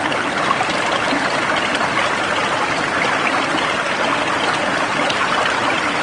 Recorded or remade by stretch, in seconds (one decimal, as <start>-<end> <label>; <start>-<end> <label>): 0.0-6.0 recorded